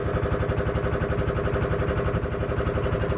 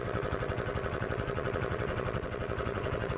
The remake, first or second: second